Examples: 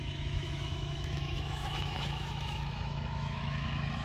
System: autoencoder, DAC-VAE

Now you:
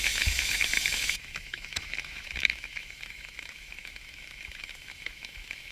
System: autoencoder, DAC-VAE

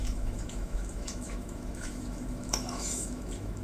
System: autoencoder, DAC-VAE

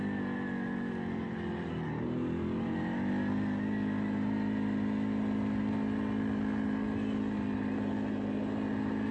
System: none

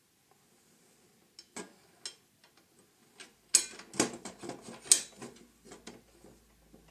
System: none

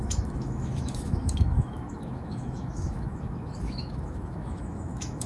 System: autoencoder, DAC-VAE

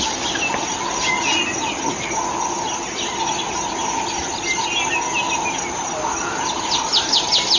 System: none